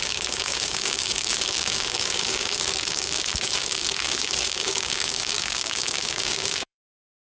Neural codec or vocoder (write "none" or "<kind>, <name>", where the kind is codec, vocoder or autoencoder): codec, DAC